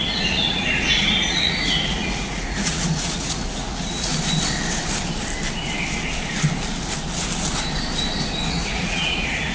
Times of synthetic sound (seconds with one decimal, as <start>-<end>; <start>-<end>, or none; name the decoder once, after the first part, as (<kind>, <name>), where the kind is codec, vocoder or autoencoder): 0.0-4.1 (vocoder, Vocos); 8.5-9.5